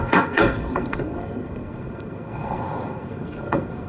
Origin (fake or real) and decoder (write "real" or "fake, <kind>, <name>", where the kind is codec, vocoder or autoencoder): fake, codec, SNAC